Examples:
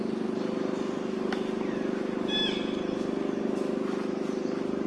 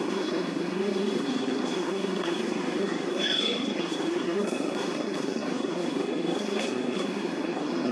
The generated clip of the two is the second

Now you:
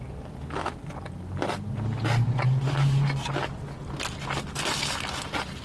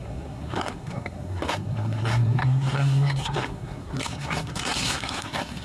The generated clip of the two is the second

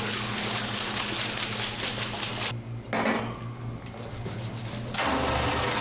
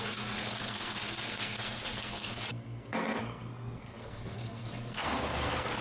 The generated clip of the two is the second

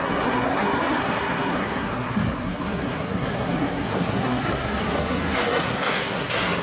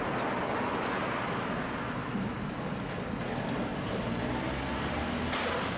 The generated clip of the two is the first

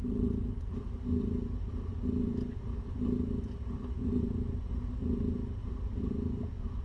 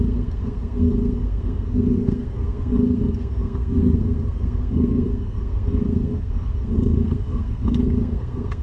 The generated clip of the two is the second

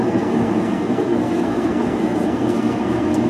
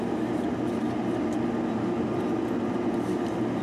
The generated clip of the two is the first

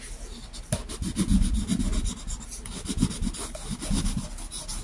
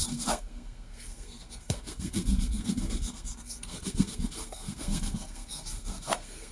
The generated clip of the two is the second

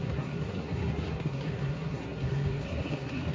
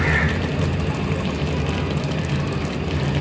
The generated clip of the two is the first